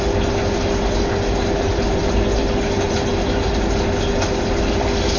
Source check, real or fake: real